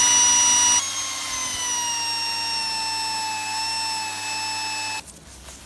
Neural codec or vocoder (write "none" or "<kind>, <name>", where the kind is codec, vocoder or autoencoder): none